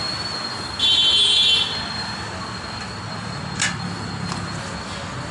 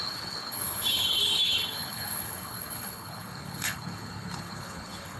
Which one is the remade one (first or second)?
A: second